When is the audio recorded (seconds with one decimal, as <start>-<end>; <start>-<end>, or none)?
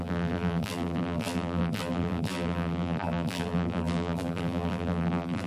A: none